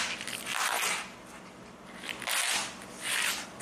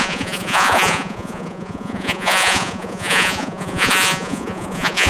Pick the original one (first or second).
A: first